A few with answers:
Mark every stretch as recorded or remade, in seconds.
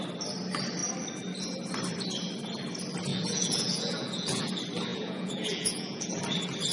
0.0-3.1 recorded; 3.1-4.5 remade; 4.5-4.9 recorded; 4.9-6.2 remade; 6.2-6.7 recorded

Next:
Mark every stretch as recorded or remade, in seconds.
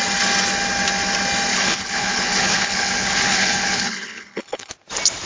0.0-1.5 recorded; 1.5-4.7 remade; 4.7-5.3 recorded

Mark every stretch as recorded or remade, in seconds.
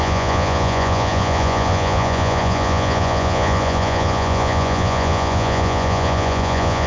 0.0-6.9 remade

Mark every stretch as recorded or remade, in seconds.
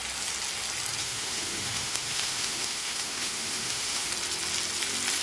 0.0-1.0 recorded; 1.0-4.1 remade; 4.1-5.2 recorded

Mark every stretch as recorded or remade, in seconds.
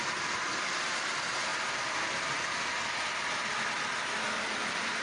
0.0-5.0 recorded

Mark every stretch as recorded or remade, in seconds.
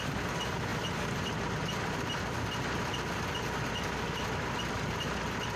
0.0-5.6 recorded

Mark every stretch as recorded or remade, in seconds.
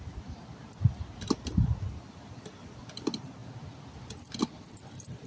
0.0-5.3 recorded